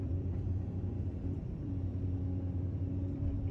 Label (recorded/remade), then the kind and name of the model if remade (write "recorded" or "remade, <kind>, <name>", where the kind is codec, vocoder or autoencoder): remade, vocoder, BigVGAN v2